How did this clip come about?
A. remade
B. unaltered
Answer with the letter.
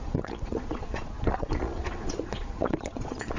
A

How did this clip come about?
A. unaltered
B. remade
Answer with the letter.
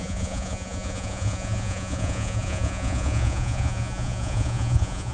B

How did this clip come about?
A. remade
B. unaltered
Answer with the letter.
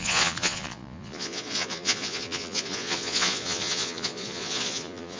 A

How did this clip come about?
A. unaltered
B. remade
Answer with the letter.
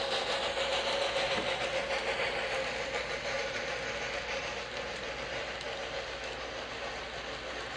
A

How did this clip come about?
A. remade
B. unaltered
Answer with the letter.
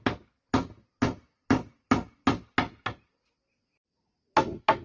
B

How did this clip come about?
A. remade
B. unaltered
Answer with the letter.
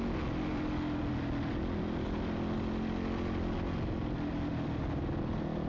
B